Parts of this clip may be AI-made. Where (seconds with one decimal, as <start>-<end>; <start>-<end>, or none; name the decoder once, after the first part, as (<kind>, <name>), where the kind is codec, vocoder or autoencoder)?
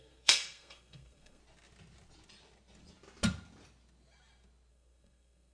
0.0-1.4 (codec, SNAC); 4.7-5.5